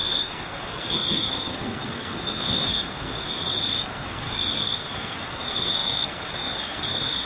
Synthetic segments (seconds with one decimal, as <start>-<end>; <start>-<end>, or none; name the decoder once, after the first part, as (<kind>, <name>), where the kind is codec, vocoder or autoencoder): 0.0-7.3 (codec, SNAC)